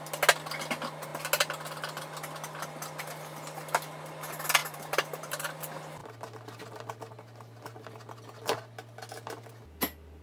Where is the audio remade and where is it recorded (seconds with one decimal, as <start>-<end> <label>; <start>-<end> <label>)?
0.0-4.6 recorded; 4.6-5.6 remade; 5.6-10.2 recorded